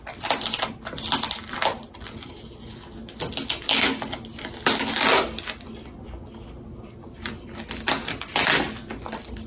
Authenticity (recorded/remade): recorded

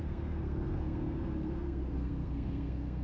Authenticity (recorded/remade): remade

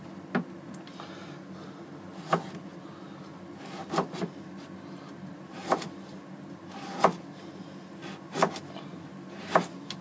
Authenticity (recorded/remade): recorded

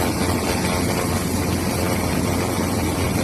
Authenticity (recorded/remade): recorded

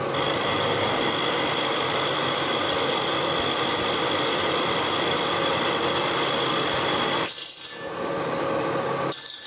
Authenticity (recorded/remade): recorded